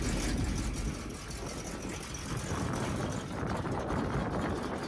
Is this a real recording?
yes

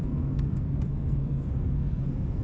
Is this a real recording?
no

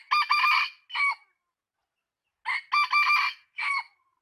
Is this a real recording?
yes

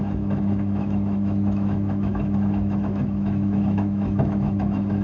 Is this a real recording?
no